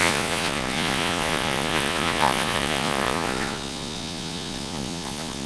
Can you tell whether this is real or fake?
fake